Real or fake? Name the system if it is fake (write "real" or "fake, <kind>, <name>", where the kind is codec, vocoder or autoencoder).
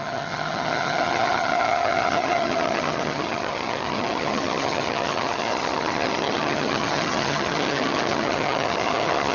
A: fake, vocoder, HiFi-GAN